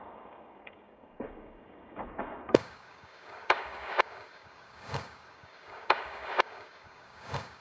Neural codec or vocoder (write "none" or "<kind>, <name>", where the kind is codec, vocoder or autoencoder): codec, DAC